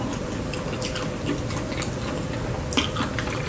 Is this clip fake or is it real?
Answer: real